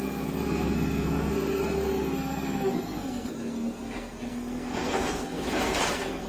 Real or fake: fake